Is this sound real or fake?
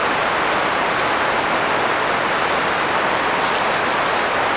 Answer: real